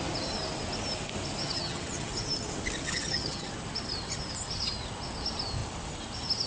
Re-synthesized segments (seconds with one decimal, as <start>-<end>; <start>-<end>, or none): 1.4-2.1; 2.8-3.5